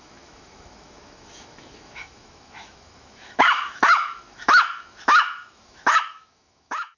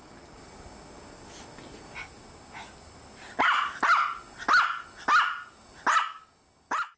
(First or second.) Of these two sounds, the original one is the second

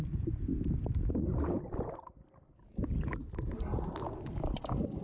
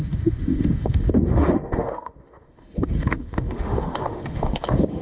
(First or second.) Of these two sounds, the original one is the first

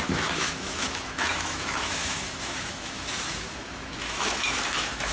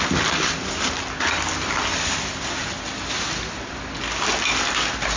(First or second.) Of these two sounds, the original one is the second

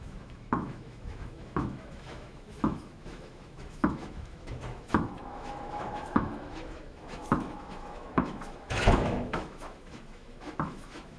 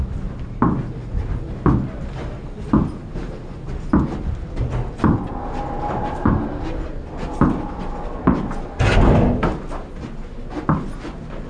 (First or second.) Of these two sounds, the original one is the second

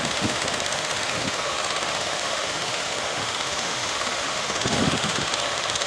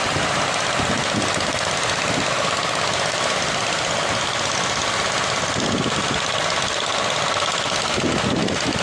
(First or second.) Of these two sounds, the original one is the second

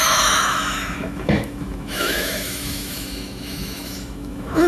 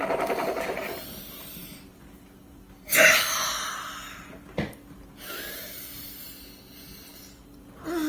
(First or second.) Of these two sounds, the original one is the second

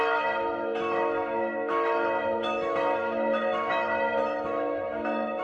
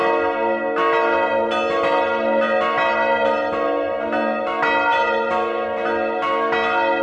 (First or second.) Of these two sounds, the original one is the second